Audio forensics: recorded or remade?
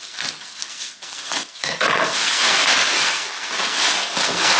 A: remade